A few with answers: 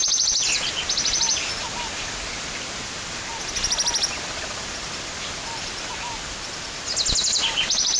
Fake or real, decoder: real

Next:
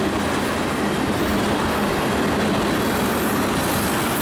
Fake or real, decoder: real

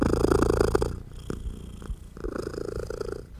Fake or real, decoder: real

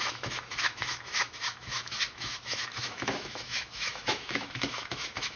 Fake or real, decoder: fake, autoencoder, DAC-VAE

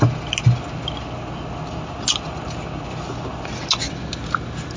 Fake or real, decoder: real